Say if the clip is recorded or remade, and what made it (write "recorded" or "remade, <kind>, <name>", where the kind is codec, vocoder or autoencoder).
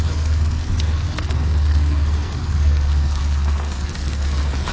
remade, codec, SNAC